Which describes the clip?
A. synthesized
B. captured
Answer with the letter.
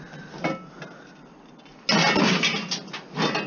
B